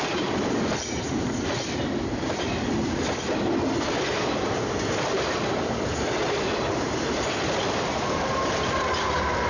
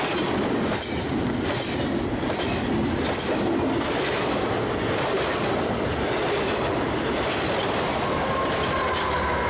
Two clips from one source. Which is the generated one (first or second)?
first